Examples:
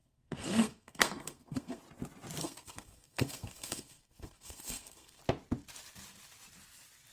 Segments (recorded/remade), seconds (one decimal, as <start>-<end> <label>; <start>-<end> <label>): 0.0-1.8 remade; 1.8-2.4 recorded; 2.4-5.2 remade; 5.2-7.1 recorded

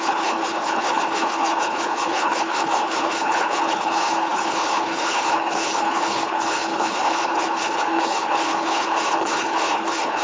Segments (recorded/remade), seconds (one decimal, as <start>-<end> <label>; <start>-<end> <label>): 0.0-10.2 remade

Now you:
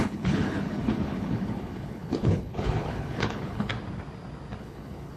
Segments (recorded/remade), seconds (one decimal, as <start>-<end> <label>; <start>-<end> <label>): 0.0-3.7 remade; 3.7-4.6 recorded; 4.6-5.2 remade

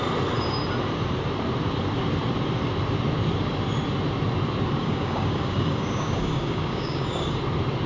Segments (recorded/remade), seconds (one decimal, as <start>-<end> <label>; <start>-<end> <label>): 0.0-4.8 recorded; 4.8-7.4 remade; 7.4-7.9 recorded

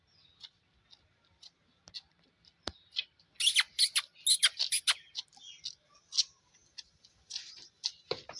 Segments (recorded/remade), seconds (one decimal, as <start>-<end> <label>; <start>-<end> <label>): 0.0-8.4 recorded